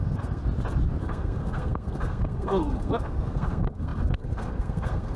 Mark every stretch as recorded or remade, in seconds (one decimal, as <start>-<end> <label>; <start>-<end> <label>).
0.0-0.4 remade; 0.4-1.0 recorded; 1.0-5.2 remade